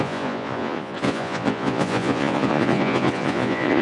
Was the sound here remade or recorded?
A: remade